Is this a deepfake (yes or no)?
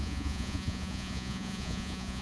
yes